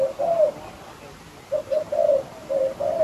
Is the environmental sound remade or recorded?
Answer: recorded